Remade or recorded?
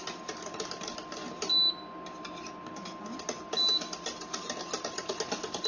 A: recorded